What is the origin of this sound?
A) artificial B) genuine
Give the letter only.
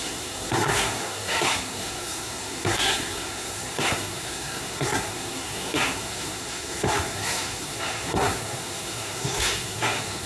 A